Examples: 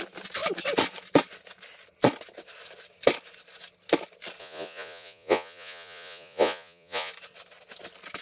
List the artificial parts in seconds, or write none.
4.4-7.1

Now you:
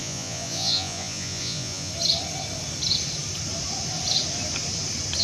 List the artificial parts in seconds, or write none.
0.0-1.9

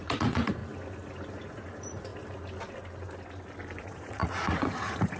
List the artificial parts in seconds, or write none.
0.0-0.6; 1.3-2.1; 3.8-5.2